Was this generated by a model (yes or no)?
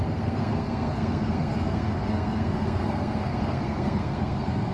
yes